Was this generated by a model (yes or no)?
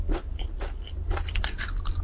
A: no